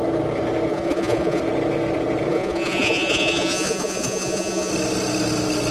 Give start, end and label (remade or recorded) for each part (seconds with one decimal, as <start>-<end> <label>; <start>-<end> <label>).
0.0-0.7 recorded; 0.7-1.4 remade; 1.4-2.3 recorded; 2.3-4.7 remade; 4.7-5.7 recorded